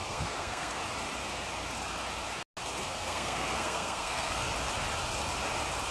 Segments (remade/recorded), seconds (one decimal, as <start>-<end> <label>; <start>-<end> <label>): 0.0-0.8 remade; 0.8-2.8 recorded; 2.8-4.5 remade; 4.5-5.9 recorded